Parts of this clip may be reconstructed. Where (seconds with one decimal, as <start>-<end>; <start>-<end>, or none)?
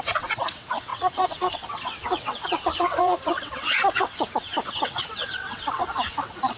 0.0-6.6